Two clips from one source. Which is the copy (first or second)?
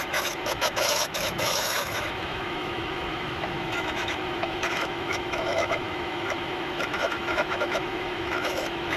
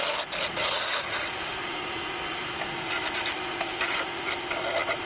first